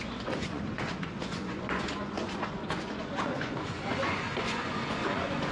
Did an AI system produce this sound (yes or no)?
yes